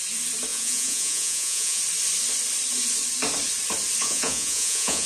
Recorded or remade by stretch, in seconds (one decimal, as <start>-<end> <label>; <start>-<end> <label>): 0.0-0.5 recorded; 0.5-1.8 remade; 1.8-4.0 recorded; 4.0-5.1 remade